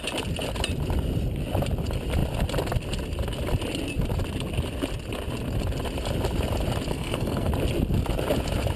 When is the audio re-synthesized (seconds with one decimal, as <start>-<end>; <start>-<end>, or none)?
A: 6.9-7.5